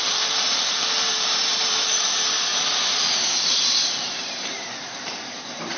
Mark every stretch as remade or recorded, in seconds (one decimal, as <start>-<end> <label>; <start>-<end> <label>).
0.0-2.5 remade; 2.5-3.4 recorded; 3.4-5.8 remade